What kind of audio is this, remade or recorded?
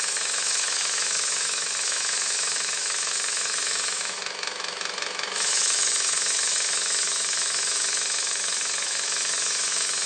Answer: remade